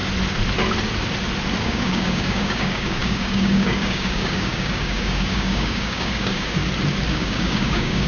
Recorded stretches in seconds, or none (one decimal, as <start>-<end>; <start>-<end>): 0.0-1.6; 6.6-7.1